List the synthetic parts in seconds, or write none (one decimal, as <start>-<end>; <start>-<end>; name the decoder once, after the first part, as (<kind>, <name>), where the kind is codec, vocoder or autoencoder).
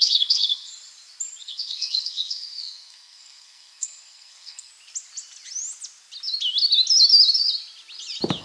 0.0-0.7 (codec, SNAC); 1.4-4.7